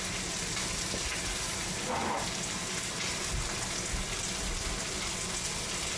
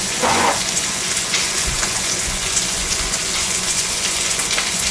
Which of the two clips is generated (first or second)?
second